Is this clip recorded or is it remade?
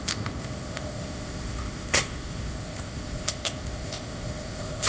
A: remade